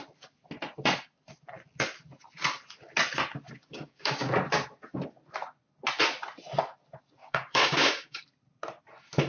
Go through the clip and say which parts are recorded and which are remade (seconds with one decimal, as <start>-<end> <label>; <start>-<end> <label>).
0.0-3.7 recorded; 3.7-4.3 remade; 4.3-7.2 recorded; 7.2-8.2 remade; 8.2-9.3 recorded